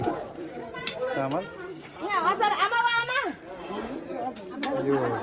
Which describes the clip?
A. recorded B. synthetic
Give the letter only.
A